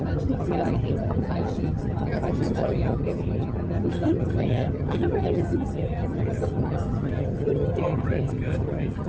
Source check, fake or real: fake